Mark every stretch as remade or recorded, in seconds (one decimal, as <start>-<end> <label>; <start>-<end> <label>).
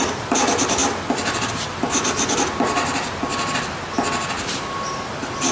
0.0-5.5 recorded